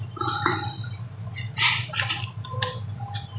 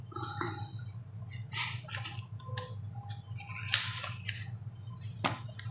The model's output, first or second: first